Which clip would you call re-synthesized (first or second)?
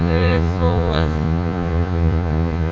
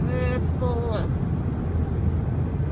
first